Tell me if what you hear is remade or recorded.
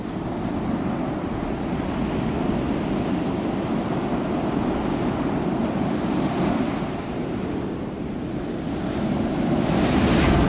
recorded